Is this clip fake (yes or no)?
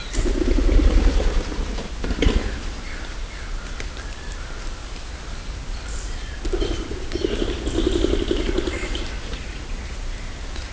no